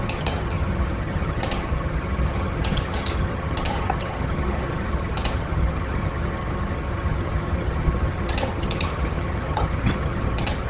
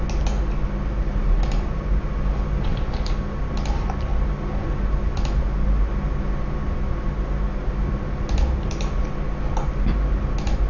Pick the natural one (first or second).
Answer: second